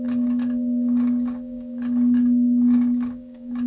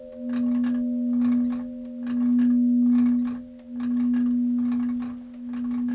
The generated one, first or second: first